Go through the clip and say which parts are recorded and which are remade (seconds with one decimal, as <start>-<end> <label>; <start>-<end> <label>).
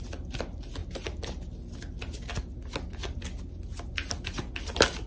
0.0-5.1 recorded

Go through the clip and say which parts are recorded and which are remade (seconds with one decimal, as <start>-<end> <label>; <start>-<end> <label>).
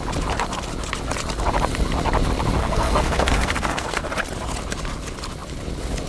0.0-2.6 recorded; 2.6-4.1 remade; 4.1-6.1 recorded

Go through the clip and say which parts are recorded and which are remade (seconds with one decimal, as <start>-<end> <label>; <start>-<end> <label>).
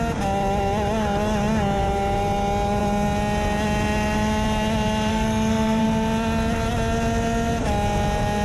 0.0-5.1 recorded; 5.1-5.8 remade; 5.8-8.4 recorded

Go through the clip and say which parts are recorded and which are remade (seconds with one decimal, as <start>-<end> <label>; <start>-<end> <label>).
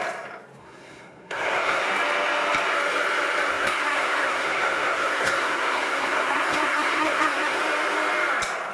0.0-0.6 recorded; 0.6-1.8 remade; 1.8-3.5 recorded; 3.5-7.6 remade; 7.6-8.7 recorded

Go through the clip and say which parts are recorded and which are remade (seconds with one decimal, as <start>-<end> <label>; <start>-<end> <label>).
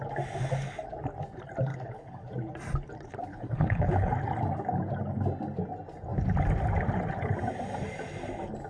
0.0-1.7 recorded; 1.7-2.3 remade; 2.3-3.3 recorded; 3.3-4.1 remade; 4.1-8.7 recorded